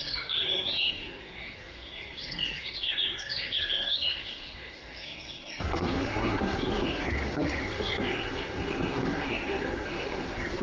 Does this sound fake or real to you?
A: fake